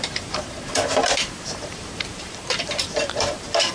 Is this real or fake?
fake